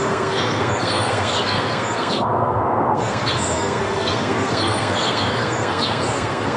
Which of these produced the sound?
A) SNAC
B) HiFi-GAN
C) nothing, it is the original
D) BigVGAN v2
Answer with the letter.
A